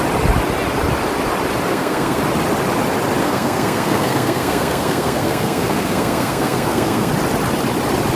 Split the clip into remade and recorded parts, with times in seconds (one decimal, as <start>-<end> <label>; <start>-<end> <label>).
0.0-1.7 recorded; 1.7-2.2 remade; 2.2-3.2 recorded; 3.2-7.1 remade; 7.1-8.2 recorded